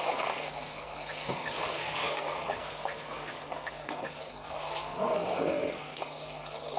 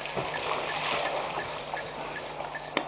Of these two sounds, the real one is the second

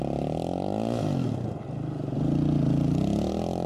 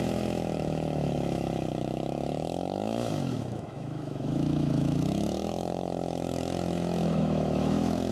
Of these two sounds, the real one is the first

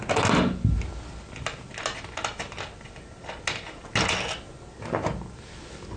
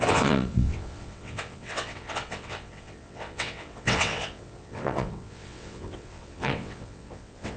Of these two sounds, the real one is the first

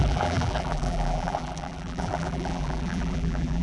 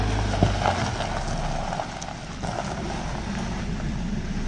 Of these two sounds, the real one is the second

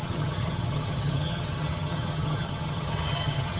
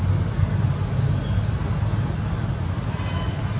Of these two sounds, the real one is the second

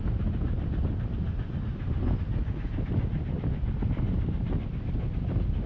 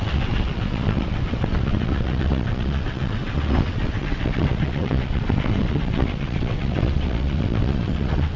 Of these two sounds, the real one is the first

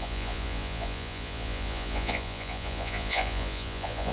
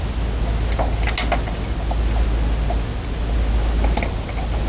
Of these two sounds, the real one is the second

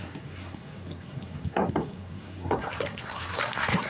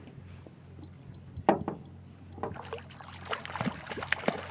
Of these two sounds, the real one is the second